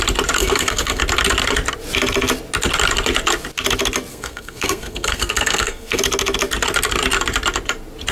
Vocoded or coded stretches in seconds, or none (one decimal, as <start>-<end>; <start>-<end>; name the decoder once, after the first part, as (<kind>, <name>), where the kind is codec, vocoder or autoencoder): 0.4-1.0 (codec, SNAC); 4.1-6.0